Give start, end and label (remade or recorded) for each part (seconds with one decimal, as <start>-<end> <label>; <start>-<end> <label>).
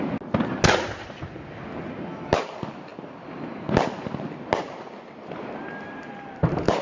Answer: 0.0-6.8 recorded